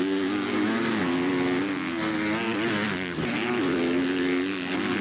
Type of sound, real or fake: real